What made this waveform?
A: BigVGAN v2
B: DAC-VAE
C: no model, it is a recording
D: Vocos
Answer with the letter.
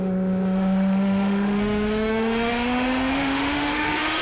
B